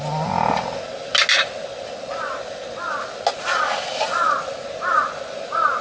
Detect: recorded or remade recorded